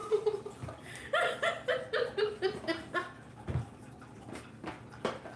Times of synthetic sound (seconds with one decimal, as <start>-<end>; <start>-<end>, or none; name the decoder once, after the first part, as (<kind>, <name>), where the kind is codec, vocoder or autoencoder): none